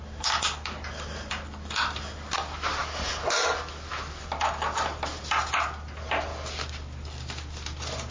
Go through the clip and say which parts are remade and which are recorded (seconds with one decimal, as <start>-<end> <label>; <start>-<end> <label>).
0.0-8.1 recorded